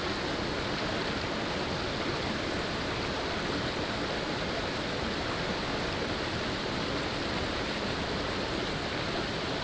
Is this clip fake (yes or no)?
no